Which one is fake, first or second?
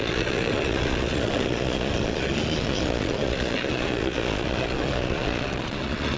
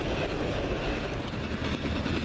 first